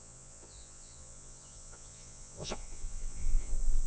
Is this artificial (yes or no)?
yes